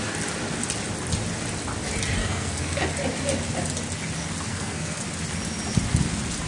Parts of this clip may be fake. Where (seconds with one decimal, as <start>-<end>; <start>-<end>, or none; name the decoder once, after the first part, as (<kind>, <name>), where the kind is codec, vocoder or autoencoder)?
2.2-2.9 (codec, SNAC); 4.5-5.0